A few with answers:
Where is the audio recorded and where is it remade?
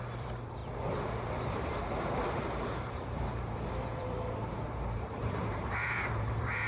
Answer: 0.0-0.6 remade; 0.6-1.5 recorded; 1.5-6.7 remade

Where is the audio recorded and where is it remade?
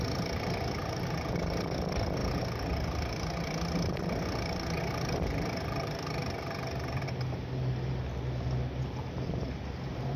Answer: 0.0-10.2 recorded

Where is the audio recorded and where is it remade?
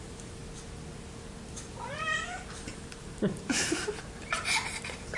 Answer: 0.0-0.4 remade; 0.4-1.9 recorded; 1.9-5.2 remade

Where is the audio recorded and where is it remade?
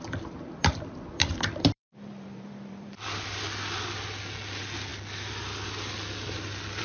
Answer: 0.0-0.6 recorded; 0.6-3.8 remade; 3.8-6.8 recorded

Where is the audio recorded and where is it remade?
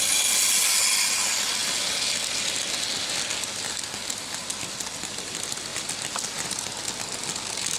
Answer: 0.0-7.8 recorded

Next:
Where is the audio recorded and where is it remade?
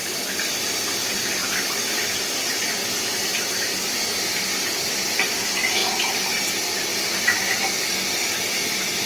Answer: 0.0-1.4 recorded; 1.4-2.2 remade; 2.2-3.3 recorded; 3.3-3.9 remade; 3.9-5.8 recorded; 5.8-6.3 remade; 6.3-6.9 recorded; 6.9-7.6 remade; 7.6-9.1 recorded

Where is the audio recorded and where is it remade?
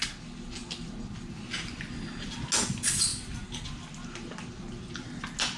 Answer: 0.0-3.1 recorded; 3.1-3.7 remade; 3.7-5.6 recorded